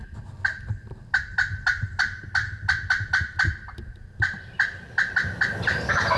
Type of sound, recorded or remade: recorded